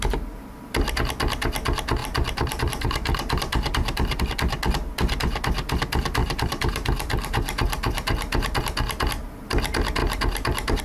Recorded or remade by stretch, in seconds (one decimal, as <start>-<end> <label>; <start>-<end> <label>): 0.0-2.0 recorded; 2.0-4.2 remade; 4.2-6.2 recorded; 6.2-8.6 remade; 8.6-10.0 recorded; 10.0-10.8 remade